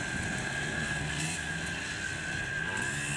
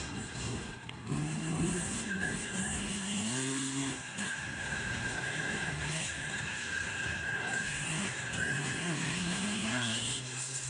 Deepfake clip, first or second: second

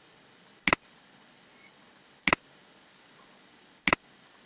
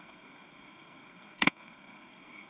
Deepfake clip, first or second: second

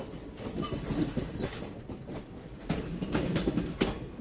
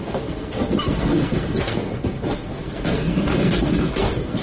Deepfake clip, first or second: second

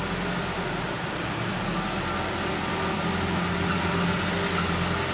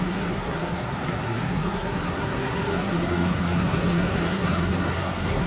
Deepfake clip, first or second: second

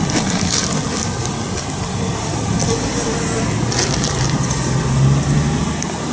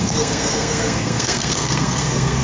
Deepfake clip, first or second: second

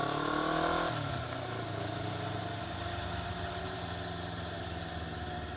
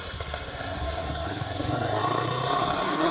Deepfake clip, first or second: second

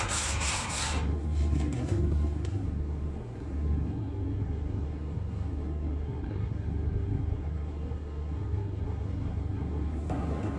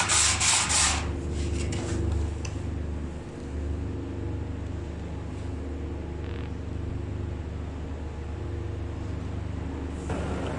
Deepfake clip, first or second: first